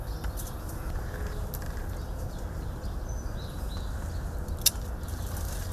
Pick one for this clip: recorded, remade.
recorded